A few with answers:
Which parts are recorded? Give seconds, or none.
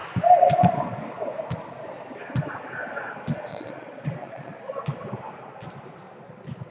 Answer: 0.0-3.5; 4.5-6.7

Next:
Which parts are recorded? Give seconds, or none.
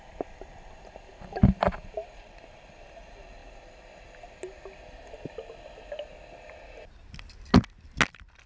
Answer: 0.0-8.5